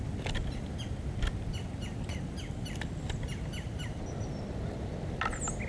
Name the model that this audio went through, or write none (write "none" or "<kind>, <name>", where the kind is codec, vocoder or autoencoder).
none